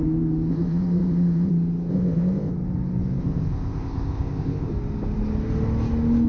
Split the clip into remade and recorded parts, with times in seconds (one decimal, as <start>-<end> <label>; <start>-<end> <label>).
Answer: 0.0-0.5 recorded; 0.5-1.5 remade; 1.5-1.9 recorded; 1.9-2.5 remade; 2.5-3.2 recorded; 3.2-4.7 remade; 4.7-6.3 recorded